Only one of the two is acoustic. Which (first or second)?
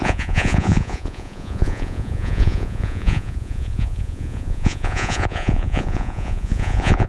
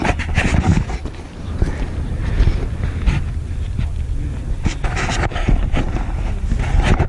second